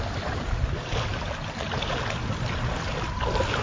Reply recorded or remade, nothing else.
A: recorded